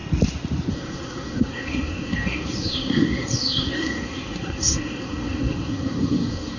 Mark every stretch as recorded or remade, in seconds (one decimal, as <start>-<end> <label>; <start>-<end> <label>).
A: 0.0-0.7 recorded; 0.7-6.6 remade